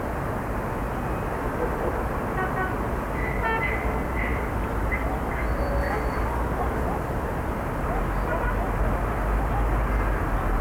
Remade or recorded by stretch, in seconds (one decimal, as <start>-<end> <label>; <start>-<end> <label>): 0.0-4.3 recorded; 4.3-5.7 remade; 5.7-10.6 recorded